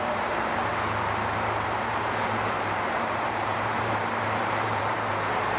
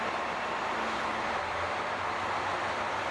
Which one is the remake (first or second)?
first